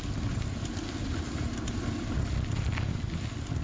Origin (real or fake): real